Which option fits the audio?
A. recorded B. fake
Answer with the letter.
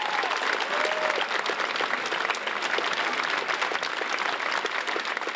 A